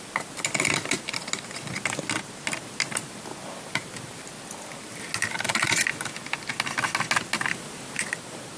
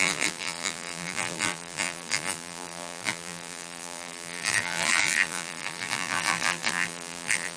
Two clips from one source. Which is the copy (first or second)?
second